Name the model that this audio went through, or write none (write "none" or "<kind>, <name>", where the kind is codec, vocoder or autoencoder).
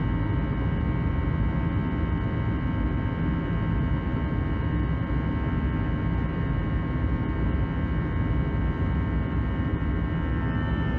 none